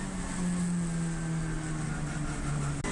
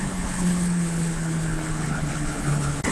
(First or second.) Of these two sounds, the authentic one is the first